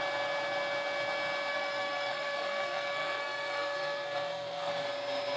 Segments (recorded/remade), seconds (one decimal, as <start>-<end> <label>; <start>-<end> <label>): 0.0-1.5 recorded; 1.5-4.7 remade; 4.7-5.4 recorded